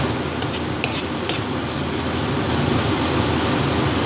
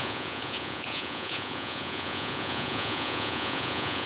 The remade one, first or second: second